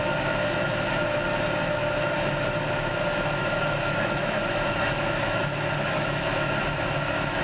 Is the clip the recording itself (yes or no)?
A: no